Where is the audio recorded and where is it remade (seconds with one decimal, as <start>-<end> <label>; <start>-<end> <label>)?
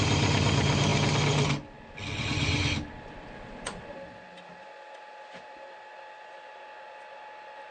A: 0.0-7.7 recorded